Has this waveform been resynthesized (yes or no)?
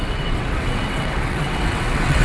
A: yes